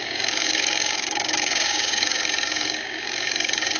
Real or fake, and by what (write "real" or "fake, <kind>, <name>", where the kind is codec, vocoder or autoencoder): fake, codec, DAC